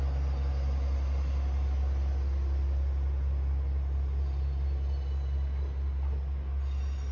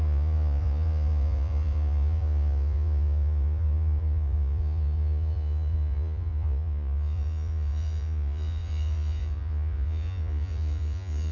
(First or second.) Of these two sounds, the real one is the first